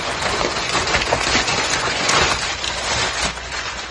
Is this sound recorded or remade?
remade